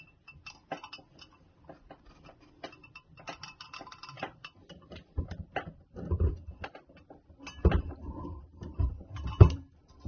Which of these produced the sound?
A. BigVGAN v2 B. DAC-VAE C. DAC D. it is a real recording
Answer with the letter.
D